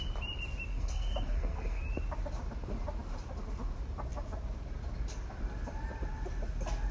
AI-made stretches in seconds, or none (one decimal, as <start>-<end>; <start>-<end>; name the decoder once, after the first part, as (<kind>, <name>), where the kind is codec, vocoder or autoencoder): 0.7-1.8 (codec, SNAC)